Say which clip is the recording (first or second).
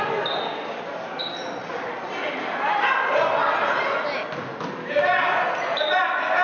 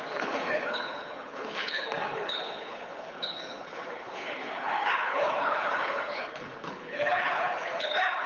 first